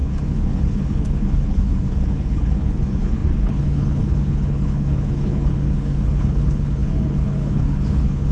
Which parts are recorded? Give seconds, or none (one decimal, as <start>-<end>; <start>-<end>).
none